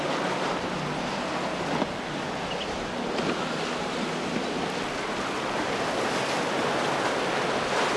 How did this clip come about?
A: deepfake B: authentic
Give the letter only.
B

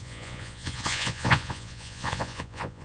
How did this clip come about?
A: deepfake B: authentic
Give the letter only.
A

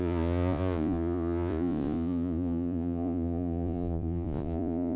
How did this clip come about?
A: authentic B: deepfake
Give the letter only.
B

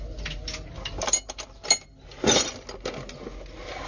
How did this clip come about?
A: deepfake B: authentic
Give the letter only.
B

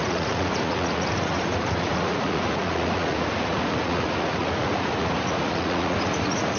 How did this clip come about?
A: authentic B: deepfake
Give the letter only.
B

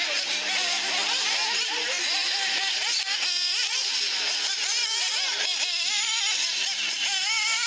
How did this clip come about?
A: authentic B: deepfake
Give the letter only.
A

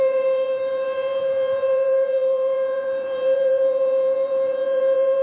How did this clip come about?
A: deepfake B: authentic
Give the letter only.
A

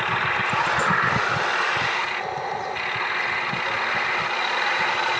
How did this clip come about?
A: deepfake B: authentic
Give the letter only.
B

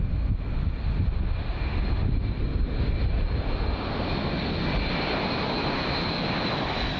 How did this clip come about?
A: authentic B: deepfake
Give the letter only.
A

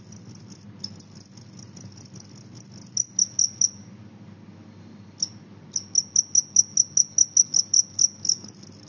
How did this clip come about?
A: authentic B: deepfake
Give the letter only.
A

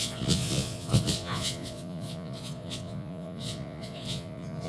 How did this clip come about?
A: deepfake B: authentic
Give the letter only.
A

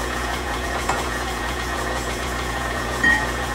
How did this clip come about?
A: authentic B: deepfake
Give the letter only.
B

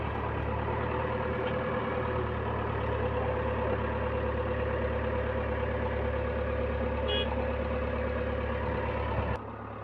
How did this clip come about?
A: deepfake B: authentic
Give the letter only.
B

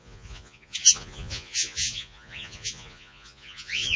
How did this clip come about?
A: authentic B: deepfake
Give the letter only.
B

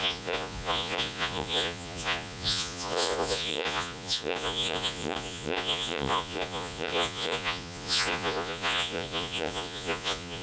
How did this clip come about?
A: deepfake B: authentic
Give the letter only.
A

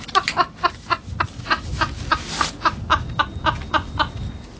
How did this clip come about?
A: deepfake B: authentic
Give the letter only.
B